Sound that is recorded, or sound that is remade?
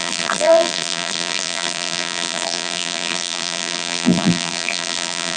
remade